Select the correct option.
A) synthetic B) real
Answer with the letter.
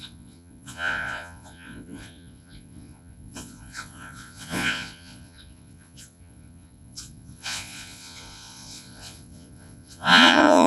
A